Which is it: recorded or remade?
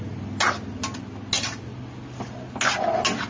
recorded